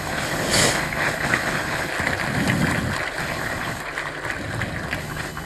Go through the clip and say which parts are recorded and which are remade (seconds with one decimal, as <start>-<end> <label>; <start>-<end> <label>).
0.0-1.9 remade; 1.9-3.2 recorded; 3.2-3.8 remade; 3.8-5.0 recorded; 5.0-5.5 remade